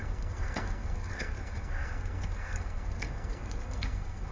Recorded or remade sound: remade